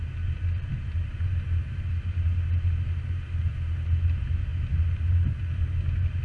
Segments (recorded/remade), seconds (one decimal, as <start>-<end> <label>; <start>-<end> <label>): 0.0-6.2 recorded